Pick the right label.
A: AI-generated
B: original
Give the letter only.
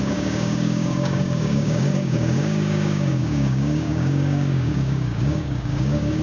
A